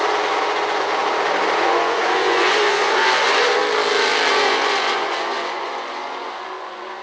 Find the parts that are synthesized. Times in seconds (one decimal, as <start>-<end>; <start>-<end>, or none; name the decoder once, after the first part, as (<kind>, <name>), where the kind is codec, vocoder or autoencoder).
0.0-1.0 (vocoder, Vocos); 1.6-3.6; 4.3-7.0